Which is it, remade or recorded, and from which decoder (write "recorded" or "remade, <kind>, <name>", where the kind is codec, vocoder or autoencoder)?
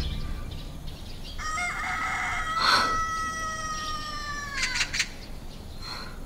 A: recorded